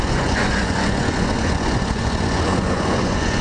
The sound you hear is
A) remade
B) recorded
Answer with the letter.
A